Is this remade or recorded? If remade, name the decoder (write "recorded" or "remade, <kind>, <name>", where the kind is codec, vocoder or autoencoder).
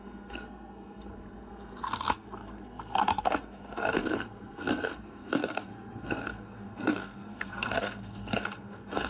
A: remade, codec, SNAC